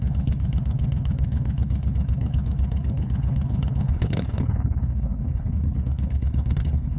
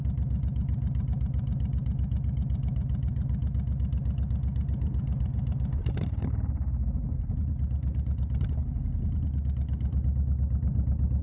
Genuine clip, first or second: second